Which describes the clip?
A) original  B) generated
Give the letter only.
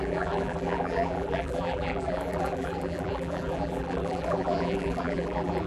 B